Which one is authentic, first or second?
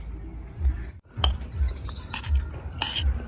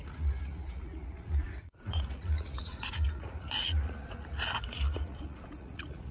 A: first